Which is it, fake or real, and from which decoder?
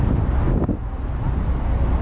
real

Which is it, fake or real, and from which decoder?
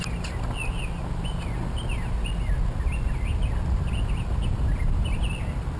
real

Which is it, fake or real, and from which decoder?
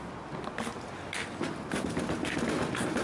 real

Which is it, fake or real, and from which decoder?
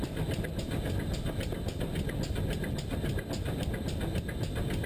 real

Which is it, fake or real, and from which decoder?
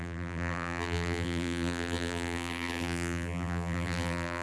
fake, vocoder, BigVGAN v2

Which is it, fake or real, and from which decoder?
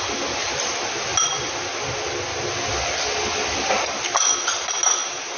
real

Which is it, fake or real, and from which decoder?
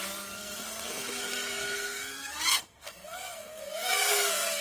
fake, codec, SNAC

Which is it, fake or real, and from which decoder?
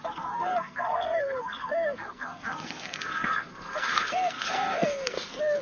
fake, codec, SNAC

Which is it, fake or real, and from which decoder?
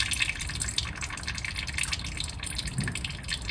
real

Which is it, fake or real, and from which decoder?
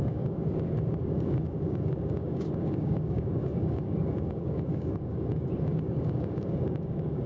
fake, codec, DAC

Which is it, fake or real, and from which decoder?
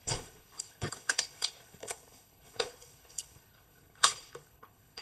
fake, codec, HILCodec